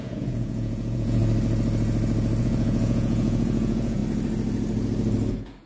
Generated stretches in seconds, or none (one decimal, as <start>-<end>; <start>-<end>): 0.0-1.2; 2.4-4.0; 5.3-5.7